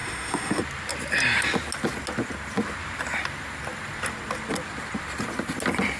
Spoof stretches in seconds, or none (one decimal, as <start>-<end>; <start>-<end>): 0.0-0.6